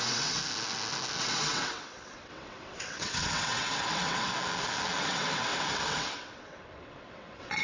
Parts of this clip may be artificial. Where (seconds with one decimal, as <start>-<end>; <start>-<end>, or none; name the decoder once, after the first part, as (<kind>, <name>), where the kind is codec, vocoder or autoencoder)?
0.0-0.4 (vocoder, WaveNeXt); 1.2-4.3; 5.0-7.6